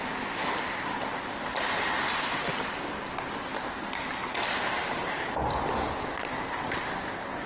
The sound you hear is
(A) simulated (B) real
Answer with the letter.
B